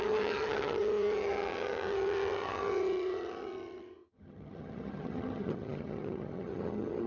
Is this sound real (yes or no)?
no